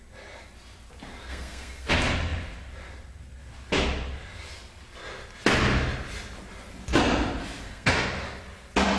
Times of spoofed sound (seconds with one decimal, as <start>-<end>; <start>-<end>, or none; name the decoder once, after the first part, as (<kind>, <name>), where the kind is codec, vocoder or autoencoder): 1.3-1.9 (codec, SNAC); 7.4-7.9